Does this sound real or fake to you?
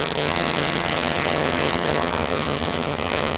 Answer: fake